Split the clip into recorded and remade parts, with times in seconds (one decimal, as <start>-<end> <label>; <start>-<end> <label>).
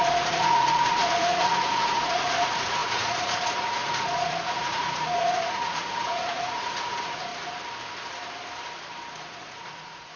0.0-7.3 remade; 7.3-9.1 recorded; 9.1-10.2 remade